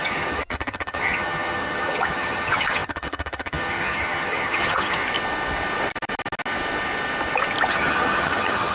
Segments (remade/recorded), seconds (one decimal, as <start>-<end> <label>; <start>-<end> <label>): 0.0-5.0 remade; 5.0-7.7 recorded; 7.7-8.7 remade